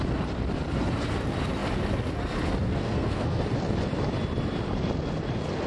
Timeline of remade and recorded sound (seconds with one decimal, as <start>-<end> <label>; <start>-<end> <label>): 0.0-2.7 recorded; 2.7-3.4 remade; 3.4-5.7 recorded